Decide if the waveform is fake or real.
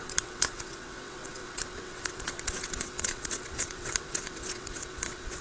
fake